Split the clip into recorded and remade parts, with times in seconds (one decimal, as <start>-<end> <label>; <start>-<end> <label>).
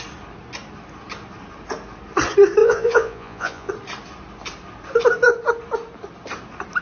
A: 0.0-2.6 recorded; 2.6-3.7 remade; 3.7-6.8 recorded